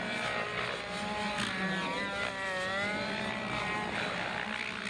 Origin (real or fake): real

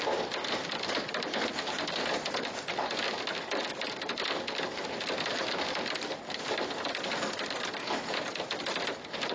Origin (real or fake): real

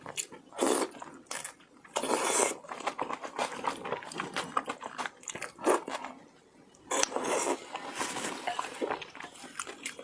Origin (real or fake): real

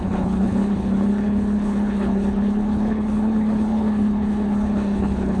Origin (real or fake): fake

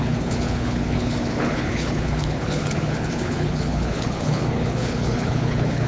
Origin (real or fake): fake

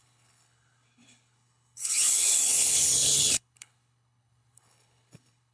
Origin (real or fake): fake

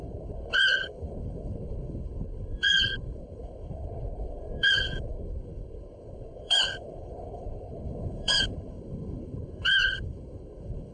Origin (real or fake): fake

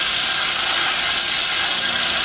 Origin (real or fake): real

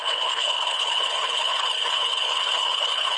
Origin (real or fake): fake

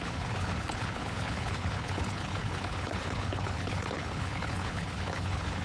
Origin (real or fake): fake